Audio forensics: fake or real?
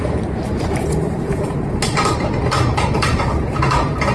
fake